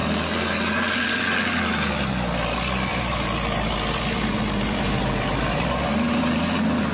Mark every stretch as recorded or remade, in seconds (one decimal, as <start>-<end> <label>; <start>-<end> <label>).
0.0-2.9 recorded; 2.9-6.5 remade; 6.5-6.9 recorded